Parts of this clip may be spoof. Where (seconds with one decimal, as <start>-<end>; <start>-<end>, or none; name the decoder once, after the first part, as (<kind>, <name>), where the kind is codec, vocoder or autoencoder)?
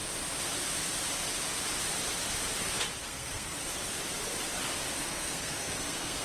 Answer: 3.0-3.6 (codec, SNAC); 5.0-6.2